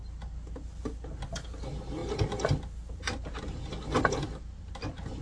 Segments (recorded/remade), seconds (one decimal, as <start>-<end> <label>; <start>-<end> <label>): 0.0-5.2 recorded